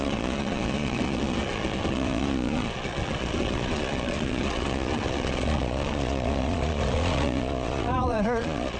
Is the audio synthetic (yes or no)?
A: yes